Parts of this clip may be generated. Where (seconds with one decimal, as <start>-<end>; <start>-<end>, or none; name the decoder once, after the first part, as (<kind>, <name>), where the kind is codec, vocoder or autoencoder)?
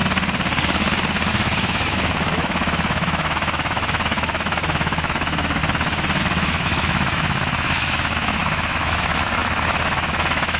1.3-5.6 (autoencoder, DAC-VAE); 6.2-10.6